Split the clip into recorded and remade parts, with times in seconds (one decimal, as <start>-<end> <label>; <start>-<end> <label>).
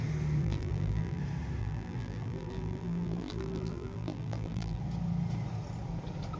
0.0-0.4 recorded; 0.4-1.2 remade; 1.2-1.6 recorded; 1.6-4.8 remade; 4.8-6.4 recorded